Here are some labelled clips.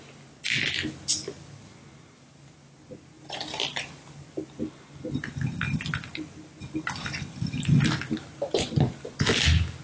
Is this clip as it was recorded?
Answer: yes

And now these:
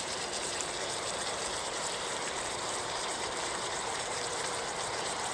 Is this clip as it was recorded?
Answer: no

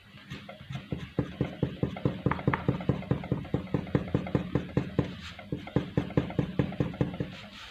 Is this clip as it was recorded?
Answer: yes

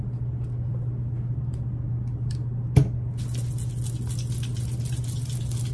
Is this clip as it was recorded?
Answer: yes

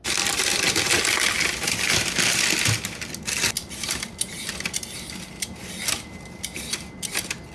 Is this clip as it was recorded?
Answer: yes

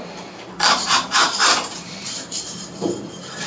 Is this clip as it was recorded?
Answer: no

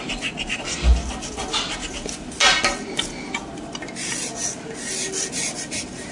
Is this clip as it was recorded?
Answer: yes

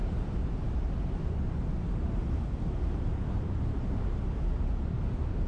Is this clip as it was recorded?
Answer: no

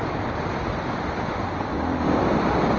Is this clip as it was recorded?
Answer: no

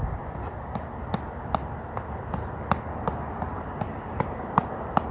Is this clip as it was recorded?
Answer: yes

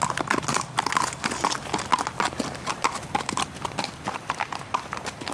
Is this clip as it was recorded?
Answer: yes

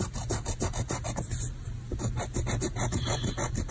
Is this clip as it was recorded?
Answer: yes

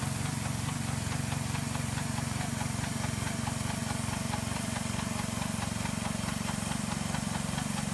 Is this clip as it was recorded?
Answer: yes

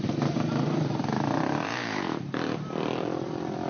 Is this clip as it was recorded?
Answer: no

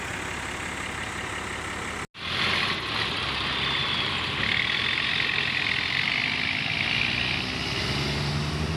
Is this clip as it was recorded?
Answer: yes